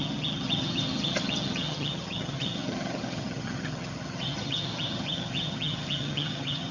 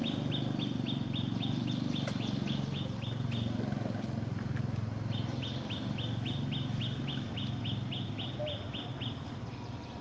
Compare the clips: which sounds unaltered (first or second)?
second